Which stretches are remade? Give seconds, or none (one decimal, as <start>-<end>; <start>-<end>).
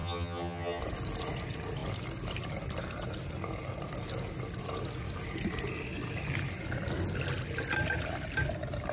0.0-0.8